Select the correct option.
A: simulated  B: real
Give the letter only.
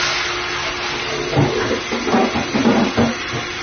B